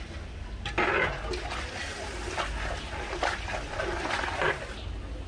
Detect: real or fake real